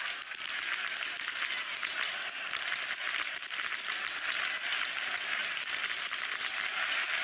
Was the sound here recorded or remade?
recorded